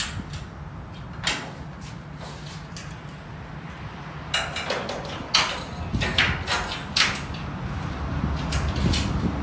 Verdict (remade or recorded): recorded